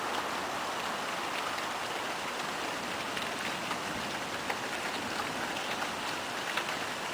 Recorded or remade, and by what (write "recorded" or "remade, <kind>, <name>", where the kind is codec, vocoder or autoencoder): recorded